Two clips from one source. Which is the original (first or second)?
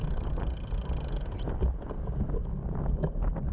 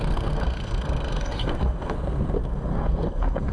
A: first